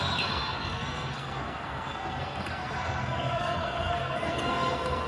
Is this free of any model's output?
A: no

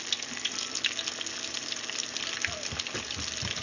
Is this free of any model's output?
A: yes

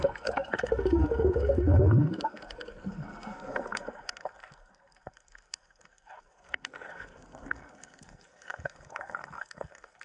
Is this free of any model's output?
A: no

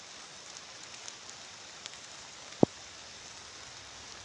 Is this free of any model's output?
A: yes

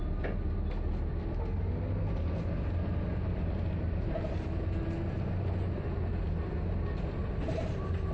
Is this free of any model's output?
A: yes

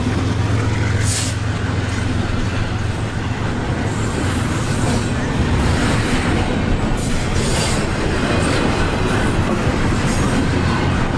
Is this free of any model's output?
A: yes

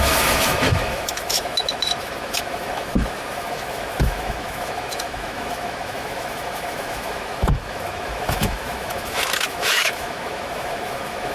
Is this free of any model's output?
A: no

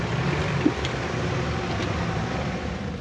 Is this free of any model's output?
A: yes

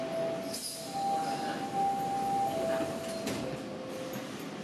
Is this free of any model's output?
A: yes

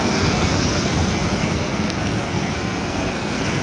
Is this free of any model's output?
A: no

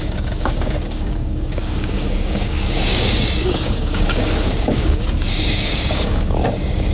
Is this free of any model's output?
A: no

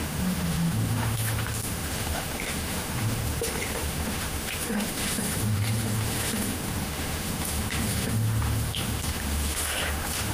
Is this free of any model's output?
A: no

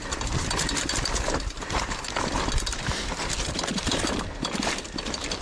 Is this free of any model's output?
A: no